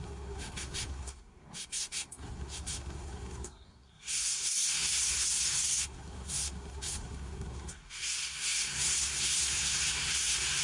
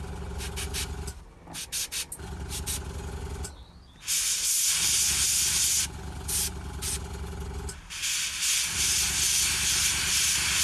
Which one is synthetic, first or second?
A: first